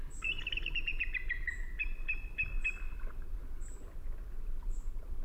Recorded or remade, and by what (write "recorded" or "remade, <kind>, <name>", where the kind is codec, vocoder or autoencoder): recorded